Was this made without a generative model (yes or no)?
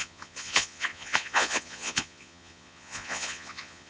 no